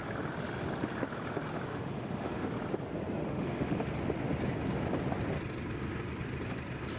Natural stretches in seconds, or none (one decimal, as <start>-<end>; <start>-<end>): 0.0-1.7; 2.5-3.2; 3.9-7.0